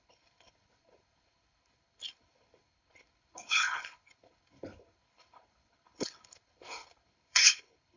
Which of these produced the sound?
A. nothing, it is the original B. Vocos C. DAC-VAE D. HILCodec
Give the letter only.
D